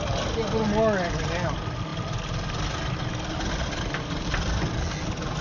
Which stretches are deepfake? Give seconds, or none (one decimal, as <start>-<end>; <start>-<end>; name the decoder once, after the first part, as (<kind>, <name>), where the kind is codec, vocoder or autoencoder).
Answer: none